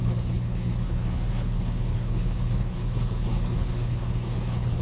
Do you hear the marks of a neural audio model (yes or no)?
yes